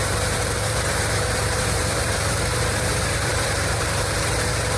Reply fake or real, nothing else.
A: fake